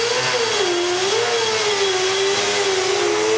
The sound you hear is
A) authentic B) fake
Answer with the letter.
A